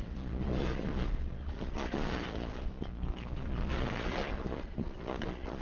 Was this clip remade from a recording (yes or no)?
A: yes